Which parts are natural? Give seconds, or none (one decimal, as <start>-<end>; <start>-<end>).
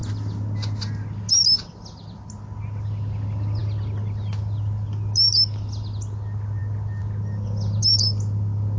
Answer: 0.0-8.8